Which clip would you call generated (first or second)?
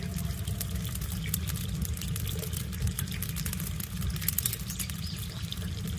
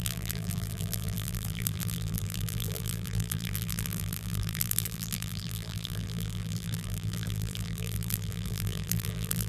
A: second